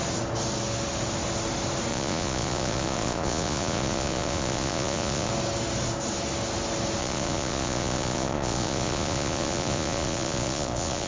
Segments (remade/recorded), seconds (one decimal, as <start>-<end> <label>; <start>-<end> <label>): 0.0-1.9 recorded; 1.9-5.3 remade; 5.3-7.0 recorded; 7.0-11.1 remade